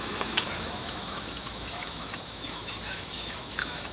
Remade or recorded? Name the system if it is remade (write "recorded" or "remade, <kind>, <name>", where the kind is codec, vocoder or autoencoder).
remade, autoencoder, DAC-VAE